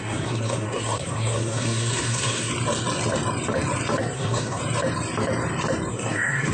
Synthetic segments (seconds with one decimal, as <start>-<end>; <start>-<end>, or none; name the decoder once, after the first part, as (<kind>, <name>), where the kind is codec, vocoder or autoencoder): 0.0-2.5 (codec, SNAC); 4.0-4.6; 5.9-6.5